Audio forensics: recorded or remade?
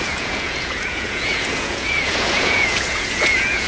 remade